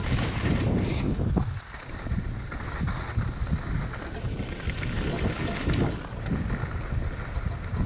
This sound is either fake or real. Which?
real